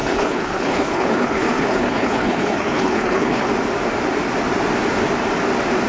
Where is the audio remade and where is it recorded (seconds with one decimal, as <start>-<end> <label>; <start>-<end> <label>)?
0.0-3.5 remade; 3.5-5.9 recorded